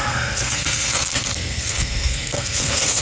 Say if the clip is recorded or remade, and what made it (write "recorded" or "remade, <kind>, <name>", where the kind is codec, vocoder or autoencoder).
remade, codec, SNAC